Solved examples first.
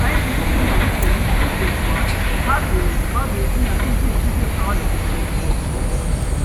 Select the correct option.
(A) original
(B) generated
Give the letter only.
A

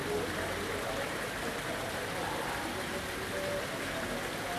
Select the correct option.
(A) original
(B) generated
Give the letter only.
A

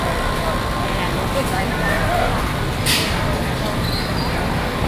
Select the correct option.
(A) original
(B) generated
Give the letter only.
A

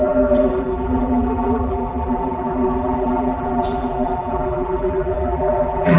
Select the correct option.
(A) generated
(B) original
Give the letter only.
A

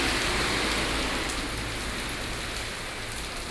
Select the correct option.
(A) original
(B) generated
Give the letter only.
A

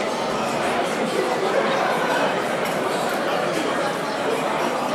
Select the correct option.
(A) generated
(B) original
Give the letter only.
A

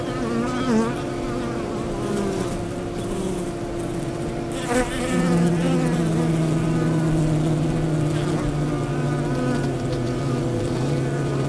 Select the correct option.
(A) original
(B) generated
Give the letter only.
A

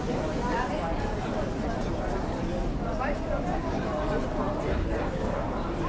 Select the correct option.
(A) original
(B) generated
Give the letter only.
A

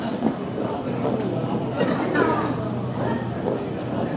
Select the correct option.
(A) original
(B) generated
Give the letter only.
A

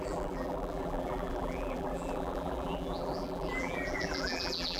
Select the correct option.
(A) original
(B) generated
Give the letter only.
B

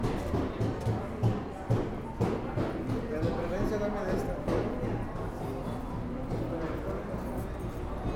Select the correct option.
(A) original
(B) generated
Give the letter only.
A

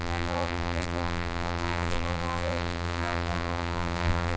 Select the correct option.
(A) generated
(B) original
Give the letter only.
A